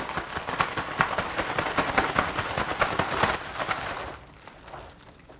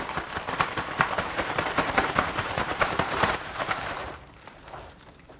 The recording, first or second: first